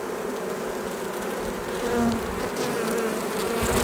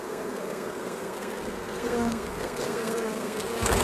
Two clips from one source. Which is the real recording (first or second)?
first